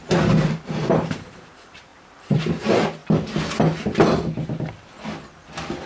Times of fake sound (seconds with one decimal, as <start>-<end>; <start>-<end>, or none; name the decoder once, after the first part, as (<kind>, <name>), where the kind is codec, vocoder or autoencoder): 0.0-3.0 (vocoder, BigVGAN v2)